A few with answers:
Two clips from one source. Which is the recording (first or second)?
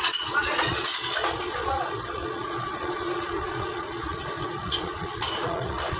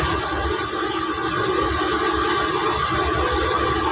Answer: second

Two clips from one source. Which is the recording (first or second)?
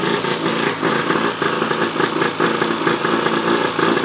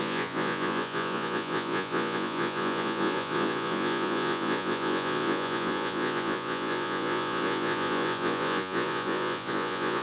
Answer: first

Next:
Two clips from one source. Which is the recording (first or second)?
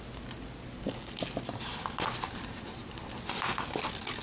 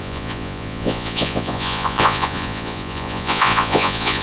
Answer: first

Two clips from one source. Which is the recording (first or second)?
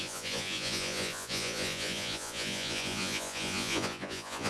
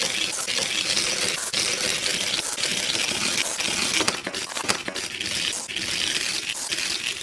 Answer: second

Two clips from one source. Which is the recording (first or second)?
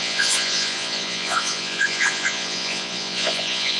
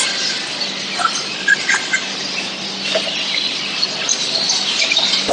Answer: second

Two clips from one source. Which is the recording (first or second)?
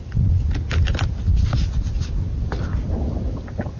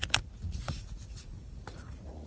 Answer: first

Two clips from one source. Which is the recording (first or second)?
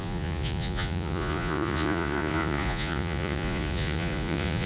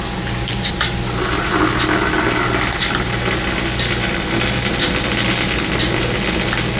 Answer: second